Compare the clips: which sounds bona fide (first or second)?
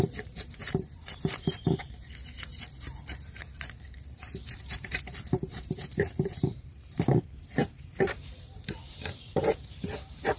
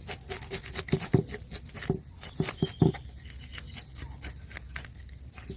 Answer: second